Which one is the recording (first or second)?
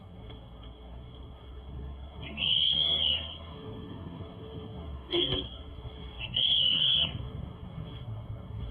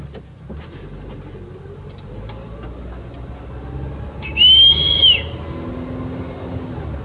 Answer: second